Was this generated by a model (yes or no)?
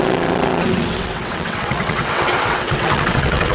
yes